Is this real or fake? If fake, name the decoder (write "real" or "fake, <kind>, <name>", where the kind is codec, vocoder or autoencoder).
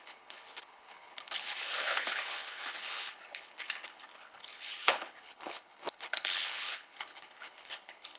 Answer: fake, codec, HILCodec